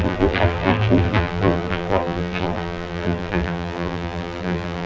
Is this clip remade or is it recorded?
remade